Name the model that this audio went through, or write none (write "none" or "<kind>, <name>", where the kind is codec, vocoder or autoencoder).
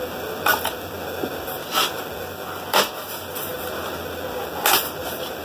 none